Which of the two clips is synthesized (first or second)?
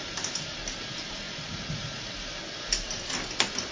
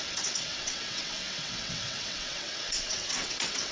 second